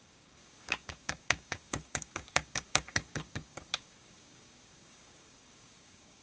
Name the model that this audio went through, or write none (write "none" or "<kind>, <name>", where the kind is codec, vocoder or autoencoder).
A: codec, DAC